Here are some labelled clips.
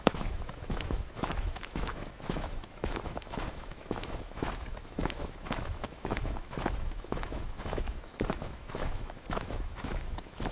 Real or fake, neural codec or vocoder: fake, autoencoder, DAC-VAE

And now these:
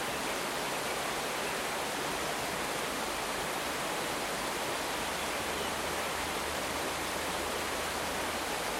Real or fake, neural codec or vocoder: real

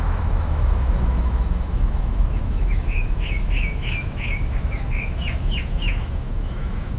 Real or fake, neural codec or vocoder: fake, autoencoder, DAC-VAE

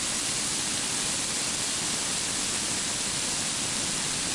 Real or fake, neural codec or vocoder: real